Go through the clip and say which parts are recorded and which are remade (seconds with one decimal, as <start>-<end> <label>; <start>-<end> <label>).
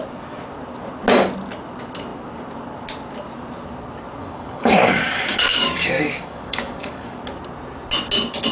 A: 0.0-4.2 recorded; 4.2-7.2 remade; 7.2-8.5 recorded